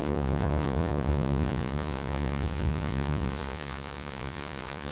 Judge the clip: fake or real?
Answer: fake